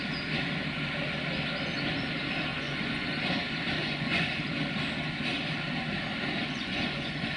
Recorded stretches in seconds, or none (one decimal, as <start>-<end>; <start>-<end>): 0.0-2.5; 3.2-3.8; 4.4-6.4